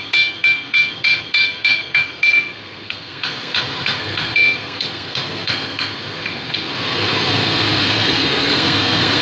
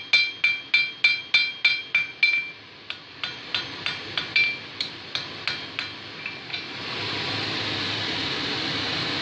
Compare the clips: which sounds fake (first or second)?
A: first